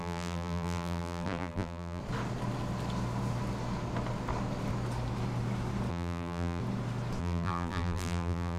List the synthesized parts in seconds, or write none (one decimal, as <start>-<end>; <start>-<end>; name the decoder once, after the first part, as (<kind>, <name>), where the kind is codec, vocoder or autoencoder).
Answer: 0.0-2.0 (vocoder, BigVGAN v2); 5.9-6.6; 7.2-8.6